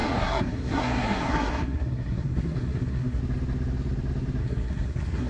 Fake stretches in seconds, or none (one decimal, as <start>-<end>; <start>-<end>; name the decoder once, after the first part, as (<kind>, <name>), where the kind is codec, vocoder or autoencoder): 0.0-3.2 (codec, SNAC); 4.4-5.3